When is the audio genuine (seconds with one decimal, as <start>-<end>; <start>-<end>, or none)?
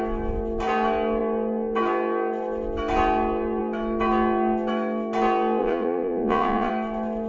0.0-5.6; 6.7-7.3